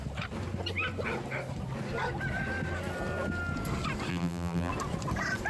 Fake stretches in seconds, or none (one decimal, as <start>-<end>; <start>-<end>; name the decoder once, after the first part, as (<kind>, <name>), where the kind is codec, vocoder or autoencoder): 4.1-4.7 (vocoder, BigVGAN v2)